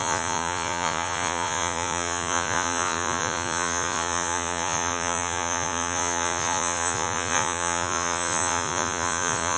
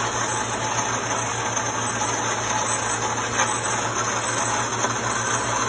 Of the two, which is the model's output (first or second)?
first